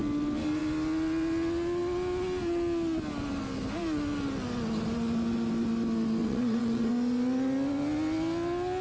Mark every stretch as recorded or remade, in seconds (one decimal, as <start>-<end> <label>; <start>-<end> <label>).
0.0-6.2 recorded; 6.2-6.9 remade; 6.9-8.8 recorded